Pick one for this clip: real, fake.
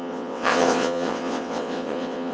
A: fake